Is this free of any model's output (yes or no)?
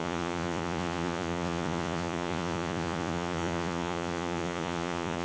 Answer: no